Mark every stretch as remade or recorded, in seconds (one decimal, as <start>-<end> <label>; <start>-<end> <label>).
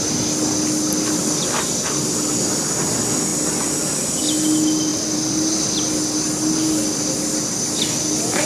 0.0-4.9 recorded; 4.9-5.8 remade; 5.8-8.5 recorded